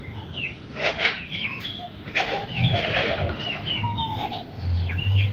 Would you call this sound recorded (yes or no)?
no